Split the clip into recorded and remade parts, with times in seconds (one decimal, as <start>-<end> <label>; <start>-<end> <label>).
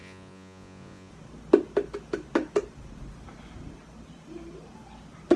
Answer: 0.0-1.1 remade; 1.1-5.4 recorded